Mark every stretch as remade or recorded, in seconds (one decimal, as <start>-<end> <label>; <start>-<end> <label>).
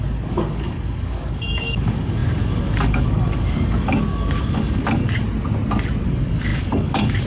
0.0-5.0 remade; 5.0-6.0 recorded; 6.0-7.3 remade